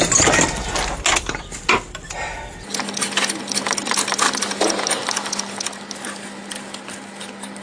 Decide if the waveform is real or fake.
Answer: real